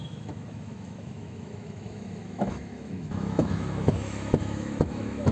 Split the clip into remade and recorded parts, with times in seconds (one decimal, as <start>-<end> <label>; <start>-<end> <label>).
0.0-5.3 remade